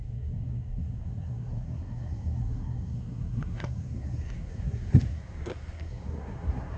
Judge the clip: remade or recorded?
remade